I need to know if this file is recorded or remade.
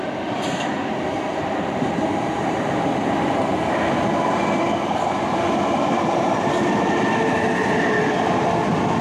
recorded